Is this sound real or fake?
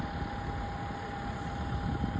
real